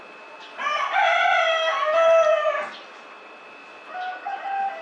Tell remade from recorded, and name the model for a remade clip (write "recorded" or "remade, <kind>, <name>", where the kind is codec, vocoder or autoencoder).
recorded